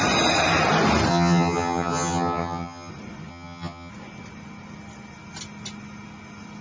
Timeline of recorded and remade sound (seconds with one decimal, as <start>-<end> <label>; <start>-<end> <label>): 0.0-1.1 recorded; 1.1-2.9 remade; 2.9-3.3 recorded; 3.3-3.9 remade; 3.9-6.6 recorded